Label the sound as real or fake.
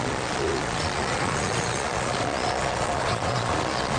fake